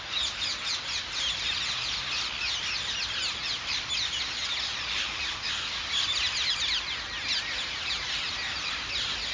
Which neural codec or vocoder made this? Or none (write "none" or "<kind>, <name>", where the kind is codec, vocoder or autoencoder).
none